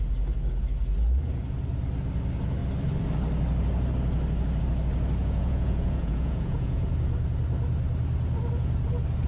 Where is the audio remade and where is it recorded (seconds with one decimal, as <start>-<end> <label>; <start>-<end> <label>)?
0.0-5.2 recorded; 5.2-6.9 remade; 6.9-9.3 recorded